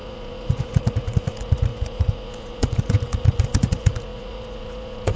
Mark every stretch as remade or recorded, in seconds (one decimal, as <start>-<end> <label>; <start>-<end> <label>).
0.0-5.2 remade